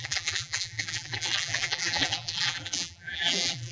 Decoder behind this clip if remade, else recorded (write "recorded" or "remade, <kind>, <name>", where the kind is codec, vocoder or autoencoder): remade, vocoder, BigVGAN v2